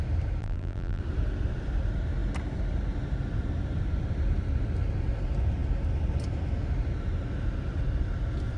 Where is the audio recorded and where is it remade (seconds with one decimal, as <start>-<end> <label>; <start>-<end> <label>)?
0.0-0.4 recorded; 0.4-1.0 remade; 1.0-8.6 recorded